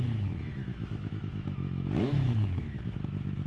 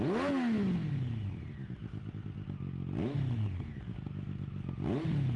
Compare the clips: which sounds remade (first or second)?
first